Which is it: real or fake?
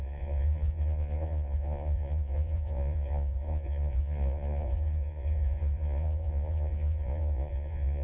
fake